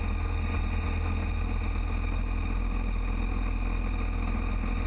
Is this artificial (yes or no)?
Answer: no